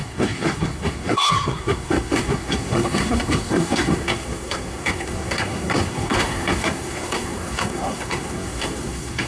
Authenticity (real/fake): fake